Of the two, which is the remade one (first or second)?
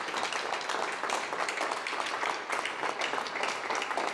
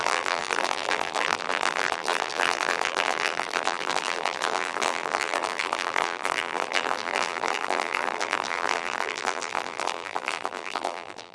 second